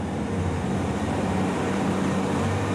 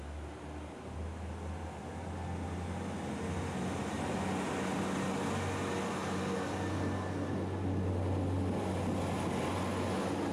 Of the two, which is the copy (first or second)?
first